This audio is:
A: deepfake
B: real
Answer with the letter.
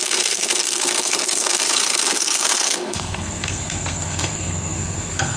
A